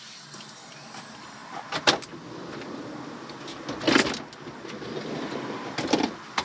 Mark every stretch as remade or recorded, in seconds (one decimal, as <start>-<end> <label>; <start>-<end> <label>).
0.0-6.4 recorded